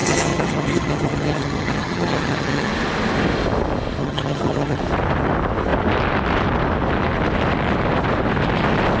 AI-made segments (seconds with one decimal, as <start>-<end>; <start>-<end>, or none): 0.0-2.7; 4.0-4.8